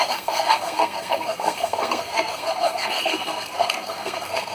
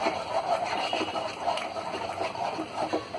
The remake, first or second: first